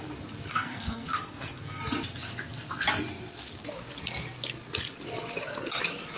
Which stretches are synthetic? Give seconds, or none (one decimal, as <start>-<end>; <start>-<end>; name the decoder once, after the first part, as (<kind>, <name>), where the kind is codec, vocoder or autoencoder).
0.5-1.8 (codec, SNAC)